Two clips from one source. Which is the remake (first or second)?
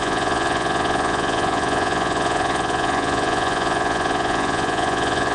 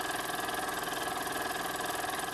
first